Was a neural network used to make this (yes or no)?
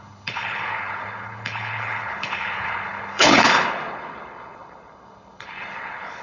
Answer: yes